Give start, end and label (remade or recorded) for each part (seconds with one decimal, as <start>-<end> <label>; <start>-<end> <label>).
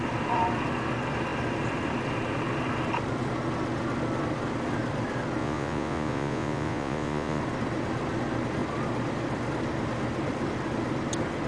0.0-5.4 recorded; 5.4-7.4 remade; 7.4-11.5 recorded